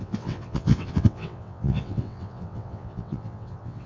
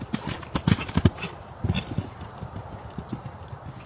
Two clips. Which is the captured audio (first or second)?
second